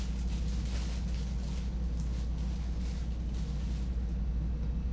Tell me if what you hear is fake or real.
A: real